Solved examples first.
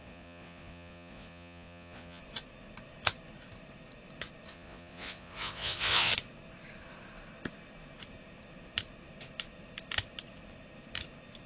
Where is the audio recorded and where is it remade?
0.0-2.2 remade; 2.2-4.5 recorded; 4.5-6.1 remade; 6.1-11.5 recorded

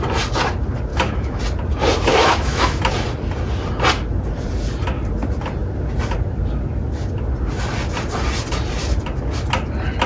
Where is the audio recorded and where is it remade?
0.0-0.9 recorded; 0.9-1.4 remade; 1.4-2.1 recorded; 2.1-2.8 remade; 2.8-10.1 recorded